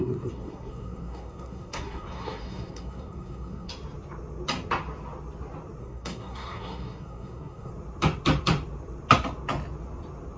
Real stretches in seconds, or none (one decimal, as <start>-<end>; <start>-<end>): 3.7-5.8; 7.7-10.4